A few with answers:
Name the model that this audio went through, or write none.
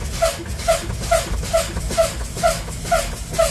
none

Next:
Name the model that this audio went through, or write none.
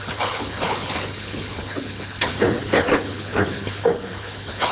codec, HILCodec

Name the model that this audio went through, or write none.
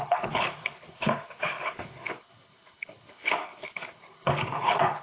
codec, HILCodec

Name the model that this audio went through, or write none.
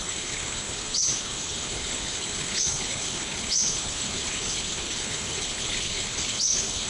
codec, HILCodec